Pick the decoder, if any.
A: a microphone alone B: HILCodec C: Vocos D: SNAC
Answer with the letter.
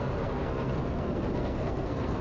D